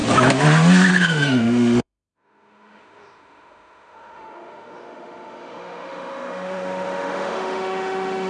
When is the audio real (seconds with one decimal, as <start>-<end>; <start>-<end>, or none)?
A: 0.0-0.9